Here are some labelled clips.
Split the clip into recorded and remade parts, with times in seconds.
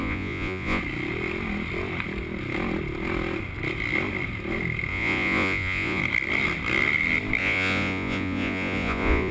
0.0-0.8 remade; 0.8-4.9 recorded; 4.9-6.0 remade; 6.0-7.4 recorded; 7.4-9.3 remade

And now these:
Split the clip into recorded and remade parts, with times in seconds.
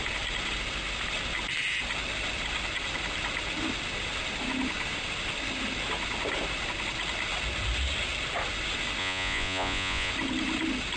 0.0-9.0 recorded; 9.0-10.1 remade; 10.1-11.0 recorded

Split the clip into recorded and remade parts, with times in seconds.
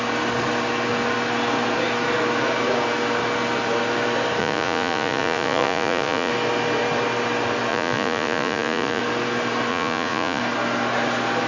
0.0-4.4 recorded; 4.4-6.3 remade; 6.3-7.7 recorded; 7.7-9.0 remade; 9.0-9.7 recorded; 9.7-10.4 remade; 10.4-11.5 recorded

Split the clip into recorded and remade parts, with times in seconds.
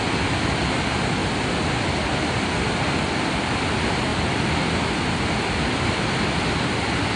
0.0-7.2 recorded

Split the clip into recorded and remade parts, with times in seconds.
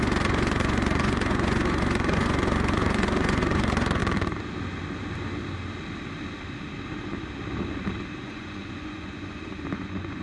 0.0-4.0 remade; 4.0-8.2 recorded; 8.2-10.2 remade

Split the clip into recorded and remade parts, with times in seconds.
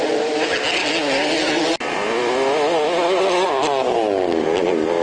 0.0-5.0 recorded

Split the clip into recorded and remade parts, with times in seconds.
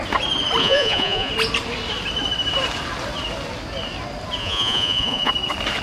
0.0-0.6 recorded; 0.6-1.3 remade; 1.3-4.4 recorded; 4.4-5.3 remade; 5.3-5.8 recorded